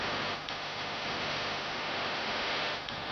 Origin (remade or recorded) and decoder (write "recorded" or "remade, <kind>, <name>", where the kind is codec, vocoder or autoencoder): remade, autoencoder, DAC-VAE